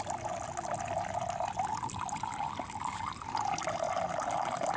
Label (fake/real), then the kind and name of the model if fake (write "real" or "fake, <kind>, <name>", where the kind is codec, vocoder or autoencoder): real